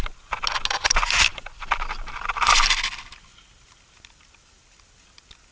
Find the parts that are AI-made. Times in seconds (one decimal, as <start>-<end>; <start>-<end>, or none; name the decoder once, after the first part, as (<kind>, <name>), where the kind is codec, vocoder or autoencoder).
none